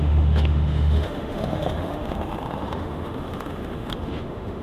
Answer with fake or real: fake